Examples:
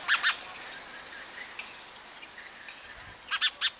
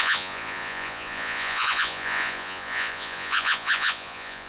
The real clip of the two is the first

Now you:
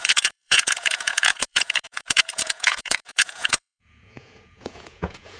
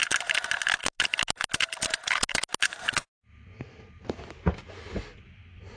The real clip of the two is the second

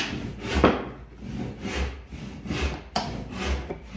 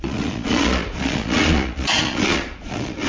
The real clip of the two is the first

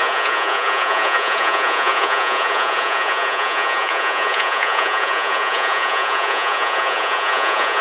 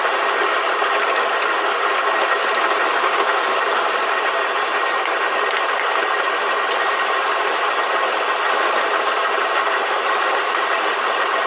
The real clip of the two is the second